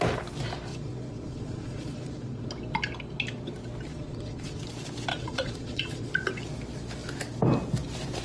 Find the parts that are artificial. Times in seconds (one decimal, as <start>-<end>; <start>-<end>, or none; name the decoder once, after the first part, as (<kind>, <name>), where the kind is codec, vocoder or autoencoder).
0.7-2.5 (vocoder, Vocos); 3.9-4.6; 5.1-6.1